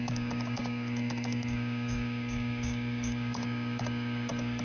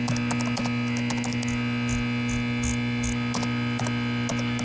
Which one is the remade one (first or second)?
first